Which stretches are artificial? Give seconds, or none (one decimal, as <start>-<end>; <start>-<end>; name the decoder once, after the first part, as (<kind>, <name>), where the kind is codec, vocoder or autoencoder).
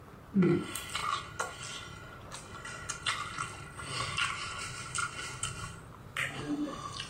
none